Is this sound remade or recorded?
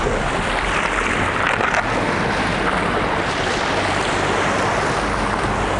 recorded